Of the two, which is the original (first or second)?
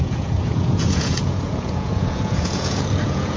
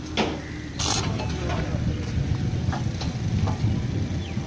second